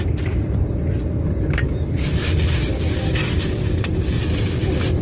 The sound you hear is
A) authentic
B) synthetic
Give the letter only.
A